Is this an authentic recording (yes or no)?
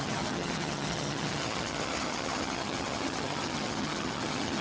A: no